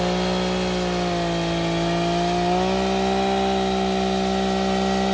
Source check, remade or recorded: recorded